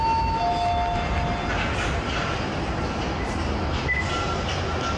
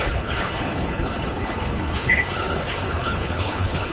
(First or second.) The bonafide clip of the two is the first